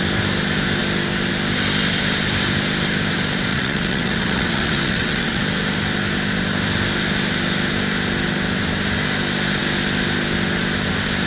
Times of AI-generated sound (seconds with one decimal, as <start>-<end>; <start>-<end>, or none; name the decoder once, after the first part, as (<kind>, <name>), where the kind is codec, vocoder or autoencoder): 3.5-5.4 (vocoder, WaveNeXt)